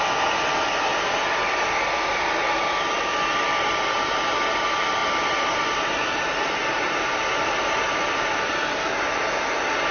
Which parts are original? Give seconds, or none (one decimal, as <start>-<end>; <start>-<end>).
0.0-0.9; 4.2-5.0; 8.9-9.9